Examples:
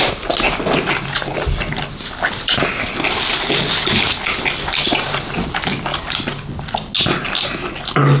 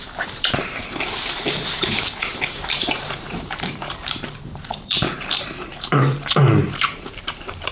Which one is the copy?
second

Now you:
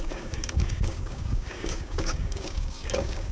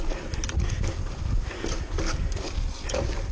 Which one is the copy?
first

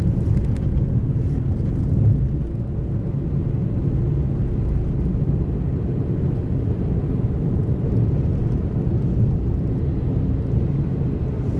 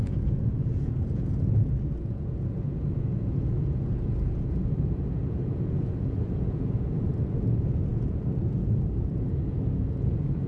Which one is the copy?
second